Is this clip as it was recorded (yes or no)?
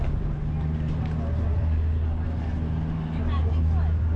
yes